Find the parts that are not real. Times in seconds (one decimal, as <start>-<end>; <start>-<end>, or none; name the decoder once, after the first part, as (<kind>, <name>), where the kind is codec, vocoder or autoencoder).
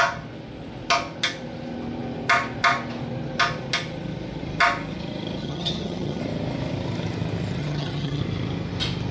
5.4-6.2 (vocoder, HiFi-GAN); 7.6-8.2